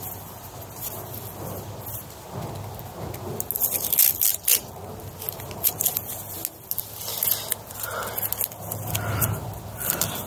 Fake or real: real